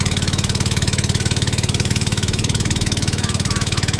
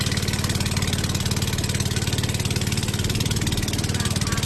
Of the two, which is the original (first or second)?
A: second